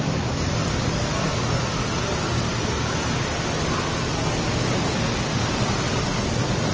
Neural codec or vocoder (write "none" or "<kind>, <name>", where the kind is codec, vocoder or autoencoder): none